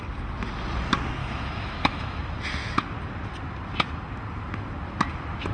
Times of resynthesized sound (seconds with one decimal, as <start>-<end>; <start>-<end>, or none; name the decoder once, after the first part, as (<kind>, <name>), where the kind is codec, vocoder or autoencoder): 1.2-2.2 (autoencoder, DAC-VAE)